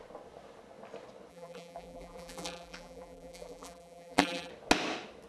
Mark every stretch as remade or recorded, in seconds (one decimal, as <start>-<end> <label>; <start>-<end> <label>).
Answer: 0.0-1.3 recorded; 1.3-4.5 remade; 4.5-5.3 recorded